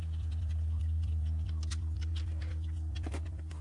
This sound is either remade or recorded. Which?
recorded